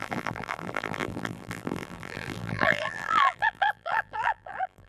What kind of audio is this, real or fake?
fake